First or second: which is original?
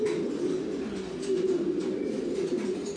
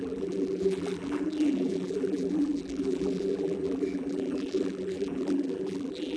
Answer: first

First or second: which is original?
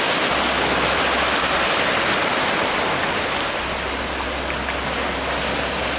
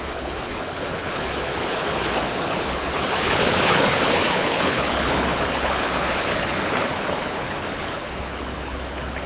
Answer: first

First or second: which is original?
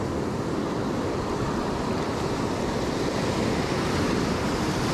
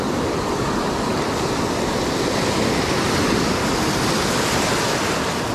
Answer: second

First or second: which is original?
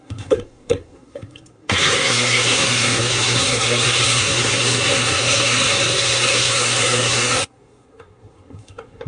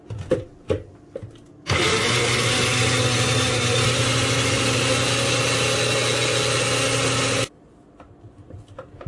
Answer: second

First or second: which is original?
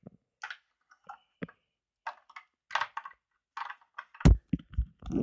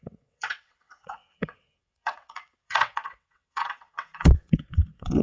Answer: first